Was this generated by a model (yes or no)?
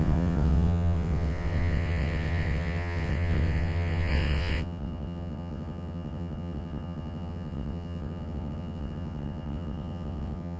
yes